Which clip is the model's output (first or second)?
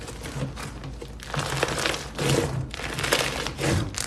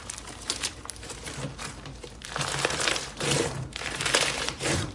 second